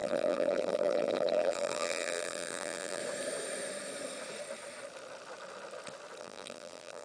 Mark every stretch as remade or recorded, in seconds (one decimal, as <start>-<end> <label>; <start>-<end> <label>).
0.0-3.0 remade; 3.0-6.2 recorded; 6.2-7.0 remade